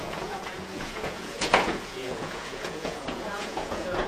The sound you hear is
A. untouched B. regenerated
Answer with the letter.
B